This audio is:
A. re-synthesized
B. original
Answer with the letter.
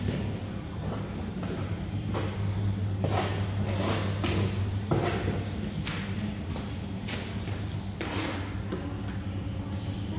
B